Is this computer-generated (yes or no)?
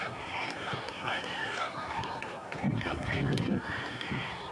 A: yes